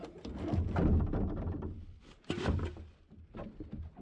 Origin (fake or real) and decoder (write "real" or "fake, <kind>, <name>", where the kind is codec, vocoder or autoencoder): real